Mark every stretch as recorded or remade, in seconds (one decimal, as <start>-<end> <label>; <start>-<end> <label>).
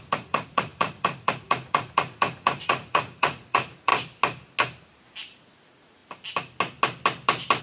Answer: 0.0-3.9 remade; 3.9-5.4 recorded; 5.4-6.0 remade; 6.0-7.6 recorded